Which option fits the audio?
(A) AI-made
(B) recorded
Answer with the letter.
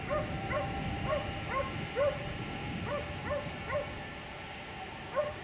B